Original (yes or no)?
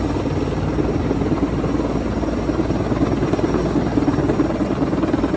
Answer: yes